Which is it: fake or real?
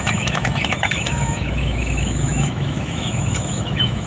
fake